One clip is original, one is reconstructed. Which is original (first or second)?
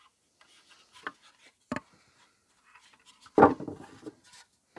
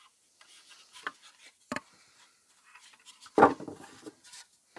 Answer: first